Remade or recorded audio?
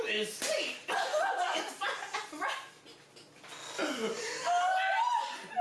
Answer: recorded